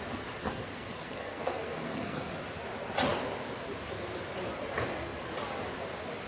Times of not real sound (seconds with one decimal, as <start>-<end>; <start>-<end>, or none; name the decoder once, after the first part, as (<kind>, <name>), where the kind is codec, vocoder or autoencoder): 0.4-2.3 (codec, SNAC)